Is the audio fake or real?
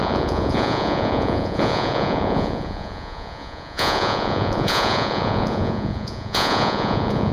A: fake